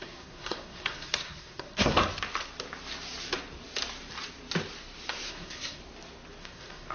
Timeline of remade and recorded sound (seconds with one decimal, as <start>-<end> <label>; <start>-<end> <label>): 0.0-2.0 remade; 2.0-5.3 recorded; 5.3-5.8 remade; 5.8-6.4 recorded; 6.4-6.9 remade